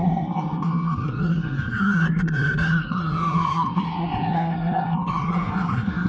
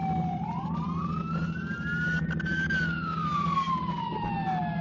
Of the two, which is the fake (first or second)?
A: first